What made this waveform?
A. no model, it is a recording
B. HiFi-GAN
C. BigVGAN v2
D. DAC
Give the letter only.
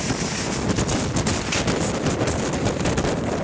A